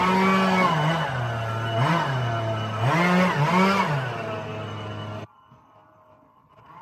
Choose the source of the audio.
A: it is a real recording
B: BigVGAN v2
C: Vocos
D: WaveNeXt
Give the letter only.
A